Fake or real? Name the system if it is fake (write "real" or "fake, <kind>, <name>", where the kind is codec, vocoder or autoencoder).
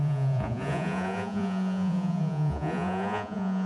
fake, vocoder, Vocos